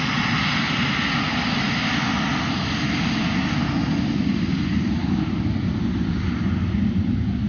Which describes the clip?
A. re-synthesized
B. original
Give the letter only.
B